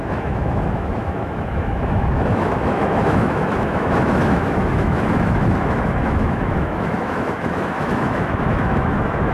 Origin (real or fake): fake